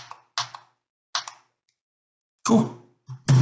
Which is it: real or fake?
real